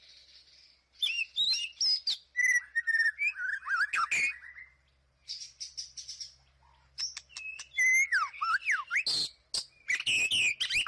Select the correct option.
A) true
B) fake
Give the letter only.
A